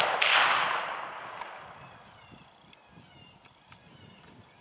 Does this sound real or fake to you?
fake